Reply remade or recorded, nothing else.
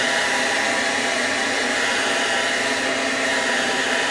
recorded